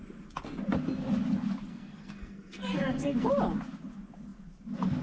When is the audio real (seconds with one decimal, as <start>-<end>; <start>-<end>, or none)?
0.0-1.7; 3.3-5.0